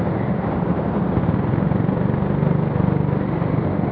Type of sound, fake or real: real